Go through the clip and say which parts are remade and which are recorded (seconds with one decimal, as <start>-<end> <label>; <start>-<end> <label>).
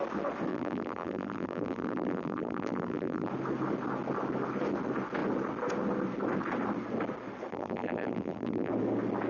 0.0-0.5 recorded; 0.5-3.3 remade; 3.3-7.5 recorded; 7.5-8.7 remade; 8.7-9.3 recorded